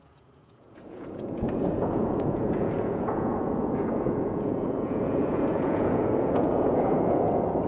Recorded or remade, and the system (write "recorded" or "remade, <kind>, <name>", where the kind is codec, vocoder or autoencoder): remade, vocoder, Vocos